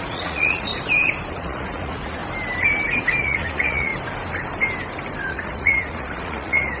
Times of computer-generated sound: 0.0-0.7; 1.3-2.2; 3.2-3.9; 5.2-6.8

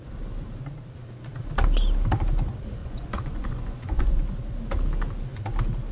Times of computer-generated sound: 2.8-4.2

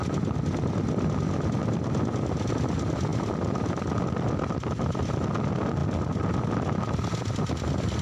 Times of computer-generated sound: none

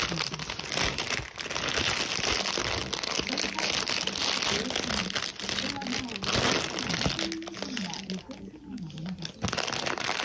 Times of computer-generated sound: none

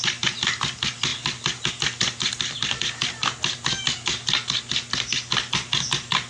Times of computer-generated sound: none

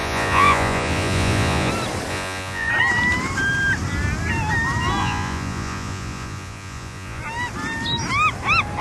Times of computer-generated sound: 0.0-1.7; 2.1-2.7; 5.0-7.2

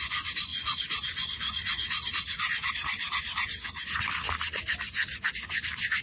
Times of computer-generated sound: none